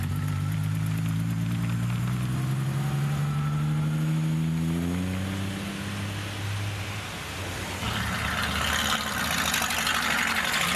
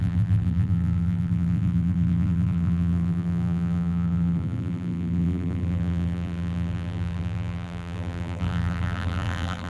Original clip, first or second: first